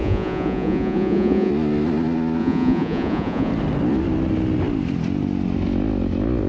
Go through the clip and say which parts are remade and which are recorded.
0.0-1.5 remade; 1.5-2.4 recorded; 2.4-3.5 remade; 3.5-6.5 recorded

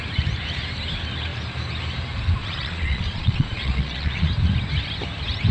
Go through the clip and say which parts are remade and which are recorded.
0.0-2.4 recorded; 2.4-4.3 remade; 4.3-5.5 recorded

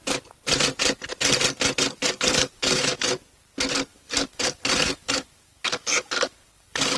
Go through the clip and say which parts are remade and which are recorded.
0.0-2.0 recorded; 2.0-3.1 remade; 3.1-3.9 recorded; 3.9-7.0 remade